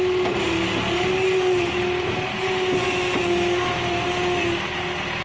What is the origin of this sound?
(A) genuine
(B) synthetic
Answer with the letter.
A